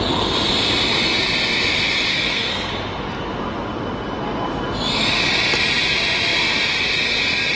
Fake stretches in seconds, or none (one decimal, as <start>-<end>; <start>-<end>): 2.1-2.7